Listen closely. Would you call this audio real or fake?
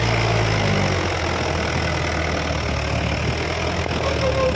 real